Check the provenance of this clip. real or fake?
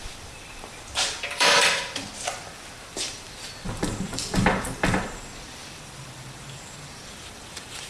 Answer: fake